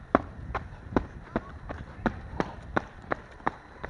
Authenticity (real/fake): fake